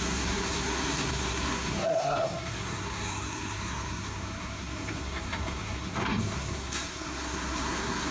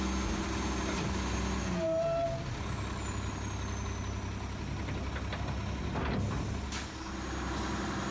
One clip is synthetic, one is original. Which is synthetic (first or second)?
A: first